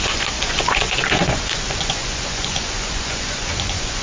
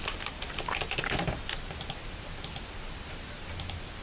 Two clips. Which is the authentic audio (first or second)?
second